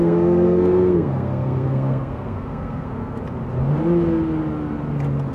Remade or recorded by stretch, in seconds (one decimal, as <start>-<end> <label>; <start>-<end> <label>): 0.0-3.2 remade; 3.2-5.3 recorded